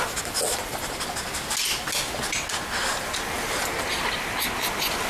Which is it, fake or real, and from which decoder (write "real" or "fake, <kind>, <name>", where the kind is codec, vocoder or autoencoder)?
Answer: real